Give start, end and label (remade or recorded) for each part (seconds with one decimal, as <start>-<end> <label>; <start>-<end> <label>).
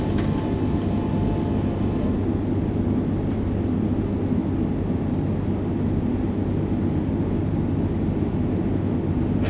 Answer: 0.0-9.5 recorded